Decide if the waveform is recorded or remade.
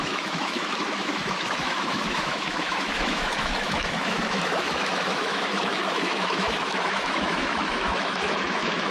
remade